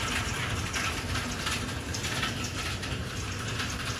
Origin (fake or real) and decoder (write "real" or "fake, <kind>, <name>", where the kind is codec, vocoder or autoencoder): fake, vocoder, BigVGAN v2